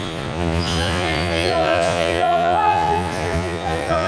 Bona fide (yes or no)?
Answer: no